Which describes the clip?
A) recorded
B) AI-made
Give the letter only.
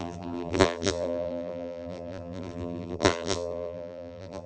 B